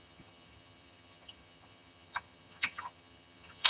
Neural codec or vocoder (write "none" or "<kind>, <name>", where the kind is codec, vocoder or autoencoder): vocoder, HiFi-GAN